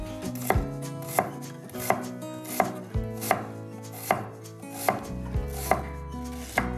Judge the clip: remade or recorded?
recorded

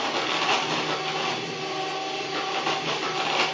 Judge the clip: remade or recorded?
recorded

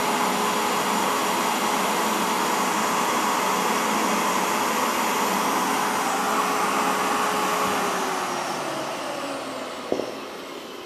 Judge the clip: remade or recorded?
recorded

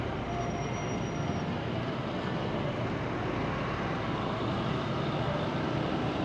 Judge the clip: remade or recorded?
recorded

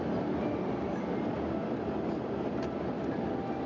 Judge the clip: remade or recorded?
recorded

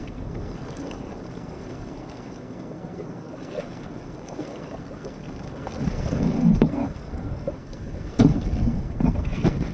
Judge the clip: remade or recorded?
remade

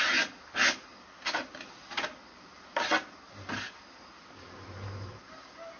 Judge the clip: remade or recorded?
recorded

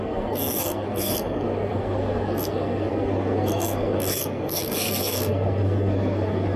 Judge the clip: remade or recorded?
remade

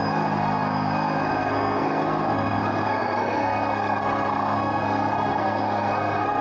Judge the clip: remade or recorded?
remade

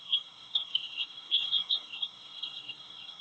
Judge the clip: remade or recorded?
remade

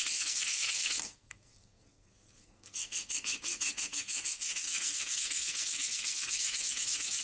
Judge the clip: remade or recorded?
remade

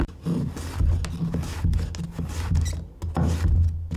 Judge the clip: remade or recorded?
recorded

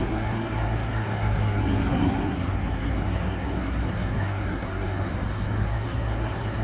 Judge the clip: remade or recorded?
remade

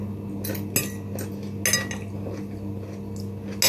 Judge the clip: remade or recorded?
recorded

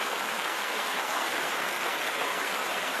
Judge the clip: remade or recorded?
remade